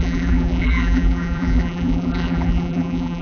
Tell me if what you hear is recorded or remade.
remade